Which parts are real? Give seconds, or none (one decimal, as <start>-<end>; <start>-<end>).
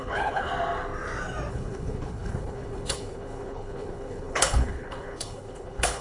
0.5-1.5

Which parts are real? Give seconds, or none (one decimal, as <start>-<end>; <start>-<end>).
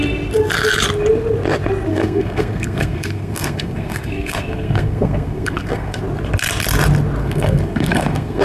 0.0-1.9; 6.0-7.2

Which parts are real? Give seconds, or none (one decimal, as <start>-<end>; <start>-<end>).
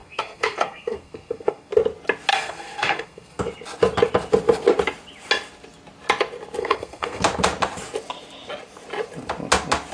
1.7-2.3; 3.4-6.6; 7.2-9.9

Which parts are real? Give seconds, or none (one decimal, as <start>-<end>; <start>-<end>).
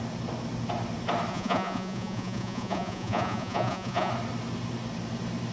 0.0-1.3; 4.1-5.5